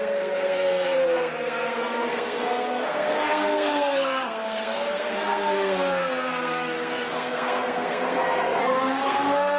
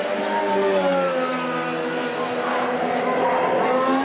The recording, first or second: second